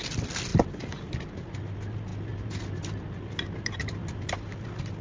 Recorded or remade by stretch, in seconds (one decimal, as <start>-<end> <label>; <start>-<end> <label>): 0.0-5.0 recorded